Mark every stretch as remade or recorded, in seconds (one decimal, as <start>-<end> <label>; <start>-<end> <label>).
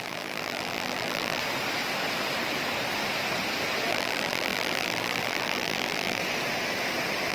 0.0-1.4 remade; 1.4-3.9 recorded; 3.9-6.2 remade; 6.2-7.3 recorded